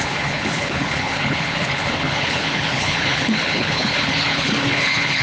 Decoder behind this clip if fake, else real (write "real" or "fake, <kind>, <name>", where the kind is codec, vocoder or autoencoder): fake, codec, HILCodec